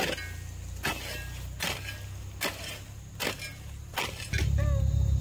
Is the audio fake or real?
real